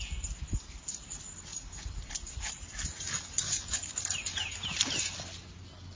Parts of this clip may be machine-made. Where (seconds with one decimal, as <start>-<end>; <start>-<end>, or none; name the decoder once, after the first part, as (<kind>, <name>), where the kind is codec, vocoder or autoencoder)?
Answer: none